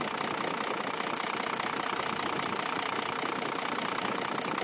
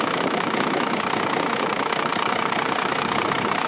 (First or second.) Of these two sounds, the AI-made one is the second